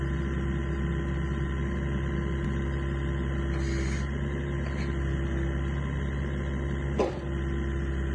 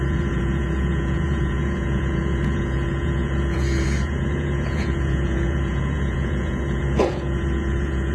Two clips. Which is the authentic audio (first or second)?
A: first